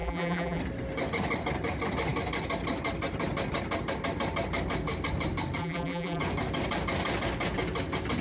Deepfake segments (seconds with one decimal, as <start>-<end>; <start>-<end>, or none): 0.0-0.6; 5.6-6.2